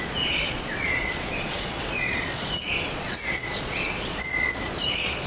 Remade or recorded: remade